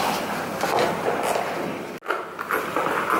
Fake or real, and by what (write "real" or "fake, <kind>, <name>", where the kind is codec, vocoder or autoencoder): real